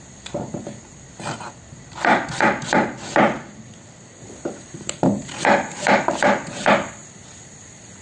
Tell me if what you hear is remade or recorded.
recorded